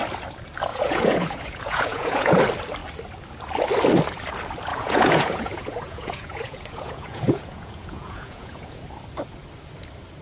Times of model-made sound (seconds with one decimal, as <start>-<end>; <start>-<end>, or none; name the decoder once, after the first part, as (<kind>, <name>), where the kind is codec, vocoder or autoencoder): 0.7-2.4 (vocoder, Vocos); 4.7-8.8

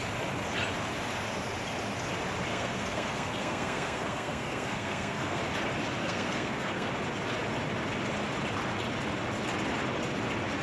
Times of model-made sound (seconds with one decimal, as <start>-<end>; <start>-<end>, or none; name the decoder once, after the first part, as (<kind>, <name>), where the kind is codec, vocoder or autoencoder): 2.5-5.4 (codec, SNAC); 6.0-6.9

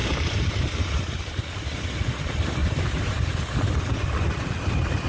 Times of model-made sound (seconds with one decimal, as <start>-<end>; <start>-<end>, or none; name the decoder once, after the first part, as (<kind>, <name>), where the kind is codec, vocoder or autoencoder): 0.0-1.4 (vocoder, BigVGAN v2); 2.6-3.3

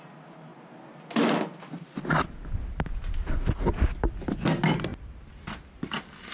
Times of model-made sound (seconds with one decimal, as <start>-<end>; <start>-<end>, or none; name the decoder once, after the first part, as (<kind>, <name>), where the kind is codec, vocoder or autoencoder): none